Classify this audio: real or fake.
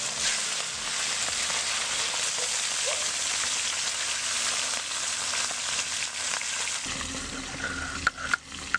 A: real